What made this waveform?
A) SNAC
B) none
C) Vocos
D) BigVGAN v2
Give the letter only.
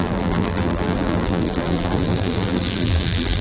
D